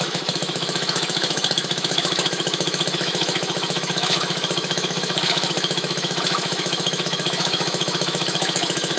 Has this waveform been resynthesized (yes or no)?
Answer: yes